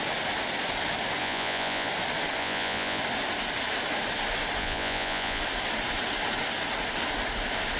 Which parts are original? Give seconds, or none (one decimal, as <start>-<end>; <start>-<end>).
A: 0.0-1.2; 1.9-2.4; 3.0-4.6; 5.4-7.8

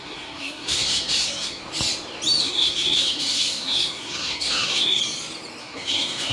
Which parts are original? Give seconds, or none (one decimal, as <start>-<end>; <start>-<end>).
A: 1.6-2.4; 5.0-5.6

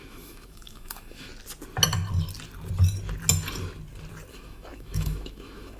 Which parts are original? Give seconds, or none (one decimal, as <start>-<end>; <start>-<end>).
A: 1.3-4.3

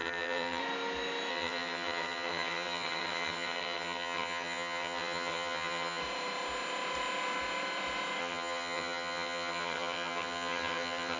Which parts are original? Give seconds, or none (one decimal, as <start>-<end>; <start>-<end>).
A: 0.6-1.3; 6.0-8.2

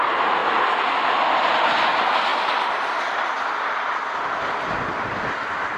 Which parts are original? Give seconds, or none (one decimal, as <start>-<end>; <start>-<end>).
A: 0.4-1.3; 2.3-5.3